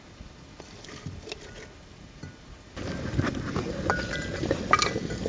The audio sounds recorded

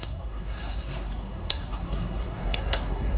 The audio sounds remade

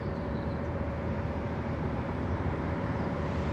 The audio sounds remade